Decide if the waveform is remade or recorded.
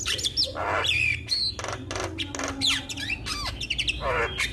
recorded